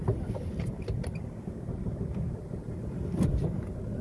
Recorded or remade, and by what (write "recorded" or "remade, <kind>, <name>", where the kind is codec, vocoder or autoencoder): recorded